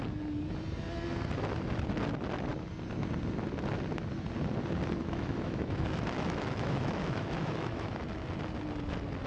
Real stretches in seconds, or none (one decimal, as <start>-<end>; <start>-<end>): 0.0-5.0; 8.0-9.3

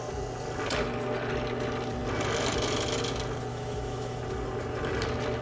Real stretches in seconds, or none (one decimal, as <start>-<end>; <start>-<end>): 0.0-3.5; 4.2-5.4

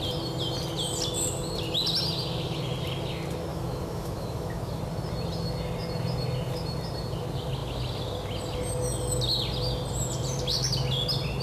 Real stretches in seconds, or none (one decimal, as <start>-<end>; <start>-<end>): 0.0-3.5; 4.8-11.4

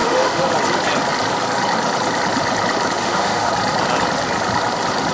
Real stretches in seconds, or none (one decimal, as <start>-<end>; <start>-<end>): 0.5-3.0; 3.5-5.1